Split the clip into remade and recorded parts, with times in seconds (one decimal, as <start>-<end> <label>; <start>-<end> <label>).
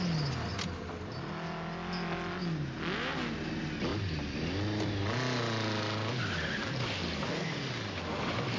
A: 0.0-8.6 recorded